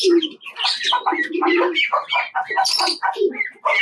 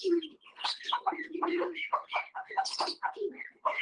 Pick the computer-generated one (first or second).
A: second